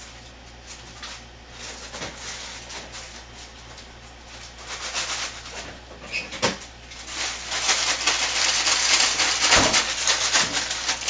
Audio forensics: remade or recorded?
recorded